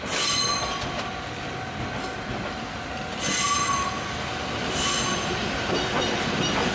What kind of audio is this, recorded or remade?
recorded